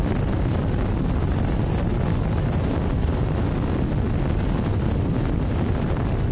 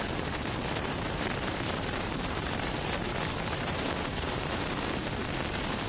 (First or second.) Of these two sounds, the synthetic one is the second